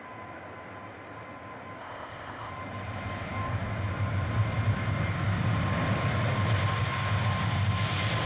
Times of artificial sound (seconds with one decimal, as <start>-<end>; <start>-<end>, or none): 1.8-2.5